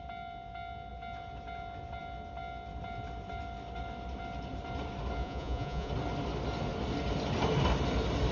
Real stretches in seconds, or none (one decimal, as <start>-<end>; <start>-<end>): 0.0-5.2; 5.9-8.3